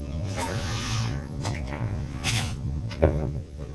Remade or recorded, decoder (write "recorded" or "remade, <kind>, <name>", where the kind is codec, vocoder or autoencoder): remade, vocoder, Vocos